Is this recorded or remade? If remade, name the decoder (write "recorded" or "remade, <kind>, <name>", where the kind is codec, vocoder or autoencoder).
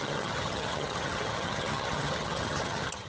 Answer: remade, vocoder, HiFi-GAN